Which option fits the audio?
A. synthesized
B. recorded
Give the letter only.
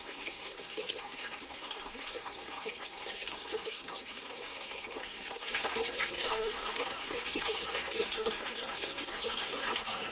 A